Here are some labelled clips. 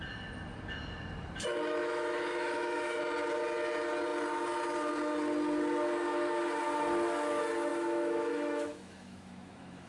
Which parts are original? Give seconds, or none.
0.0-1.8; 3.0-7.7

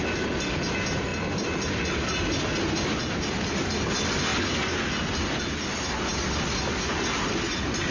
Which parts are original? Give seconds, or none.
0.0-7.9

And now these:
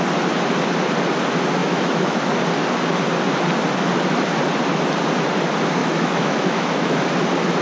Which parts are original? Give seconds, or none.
0.0-1.6; 2.3-5.8; 7.0-7.6

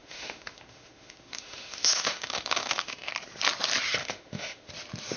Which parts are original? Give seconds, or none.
3.1-4.0; 4.7-5.2

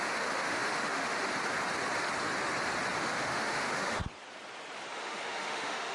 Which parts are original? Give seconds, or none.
1.3-3.0; 4.0-4.9

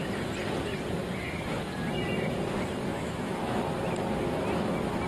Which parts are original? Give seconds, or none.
0.0-2.9; 3.6-5.1